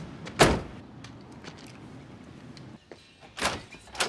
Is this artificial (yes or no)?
no